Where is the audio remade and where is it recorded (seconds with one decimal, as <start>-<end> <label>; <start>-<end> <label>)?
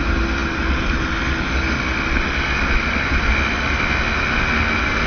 0.0-5.1 recorded